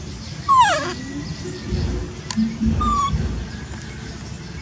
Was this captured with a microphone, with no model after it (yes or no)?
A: yes